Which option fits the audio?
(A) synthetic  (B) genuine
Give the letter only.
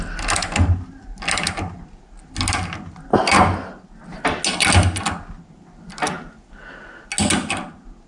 B